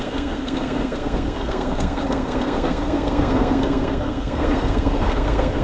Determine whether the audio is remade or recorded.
remade